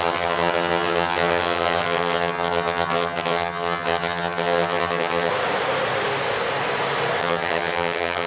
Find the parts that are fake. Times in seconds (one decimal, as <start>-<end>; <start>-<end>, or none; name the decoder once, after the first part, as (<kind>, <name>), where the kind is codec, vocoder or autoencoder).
0.0-5.3 (vocoder, HiFi-GAN); 7.2-8.3